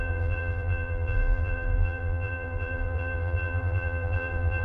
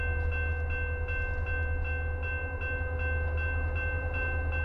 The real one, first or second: second